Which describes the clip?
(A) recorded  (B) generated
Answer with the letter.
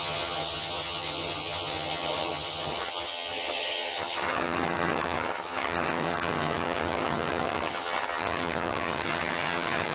B